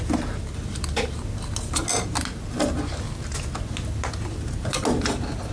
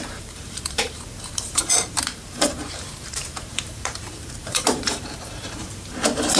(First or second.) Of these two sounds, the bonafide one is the first